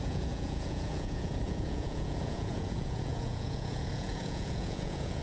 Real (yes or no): no